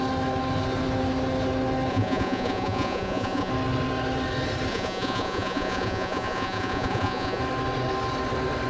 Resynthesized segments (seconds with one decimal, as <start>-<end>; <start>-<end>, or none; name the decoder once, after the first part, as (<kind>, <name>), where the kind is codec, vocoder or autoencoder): 1.9-3.5 (vocoder, Vocos); 4.7-7.4